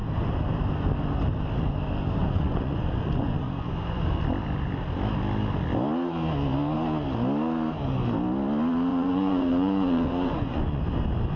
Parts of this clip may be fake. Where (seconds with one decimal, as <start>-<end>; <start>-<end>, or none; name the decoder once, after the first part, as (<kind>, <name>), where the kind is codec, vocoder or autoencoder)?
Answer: 2.2-4.0 (vocoder, Vocos); 8.9-10.8